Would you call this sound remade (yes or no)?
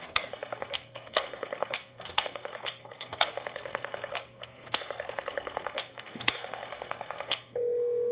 yes